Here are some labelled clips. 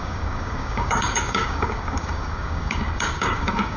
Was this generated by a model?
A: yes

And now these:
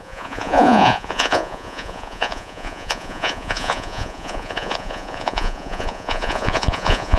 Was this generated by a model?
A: yes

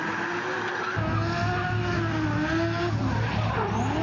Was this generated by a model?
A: no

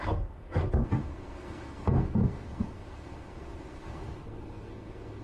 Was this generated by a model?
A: yes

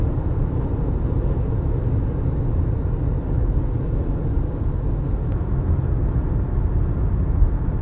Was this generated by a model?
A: no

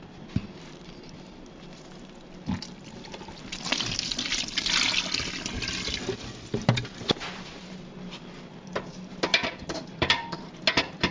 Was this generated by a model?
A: no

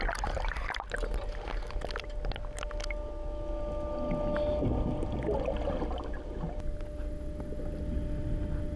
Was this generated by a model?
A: no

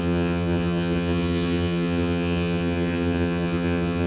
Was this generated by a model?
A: yes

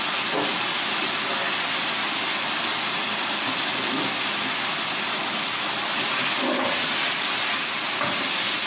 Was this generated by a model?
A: no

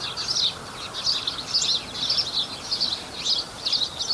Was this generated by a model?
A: no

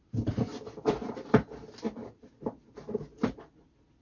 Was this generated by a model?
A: no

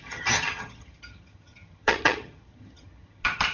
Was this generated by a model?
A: yes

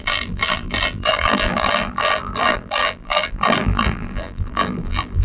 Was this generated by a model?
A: yes